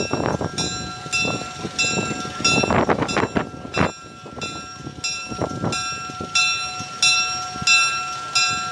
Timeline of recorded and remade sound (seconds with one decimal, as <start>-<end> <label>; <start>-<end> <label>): 0.0-8.7 recorded